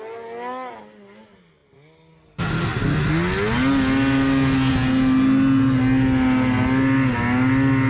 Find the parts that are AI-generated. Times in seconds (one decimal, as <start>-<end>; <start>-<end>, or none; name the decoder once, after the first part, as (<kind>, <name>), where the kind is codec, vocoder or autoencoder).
none